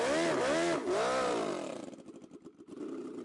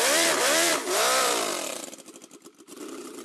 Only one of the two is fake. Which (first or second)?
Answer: second